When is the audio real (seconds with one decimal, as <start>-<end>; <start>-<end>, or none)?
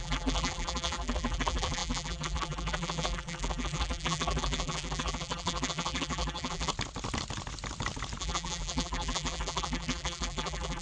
6.7-8.2